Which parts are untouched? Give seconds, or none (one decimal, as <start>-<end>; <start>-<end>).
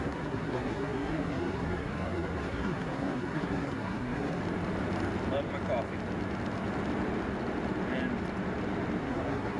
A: 4.4-9.0